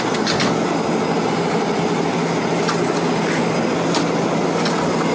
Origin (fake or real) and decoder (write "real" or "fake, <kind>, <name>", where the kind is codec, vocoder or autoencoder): real